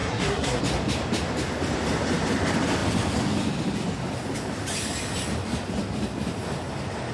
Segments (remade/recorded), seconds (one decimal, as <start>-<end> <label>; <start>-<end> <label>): 0.0-0.6 remade; 0.6-7.1 recorded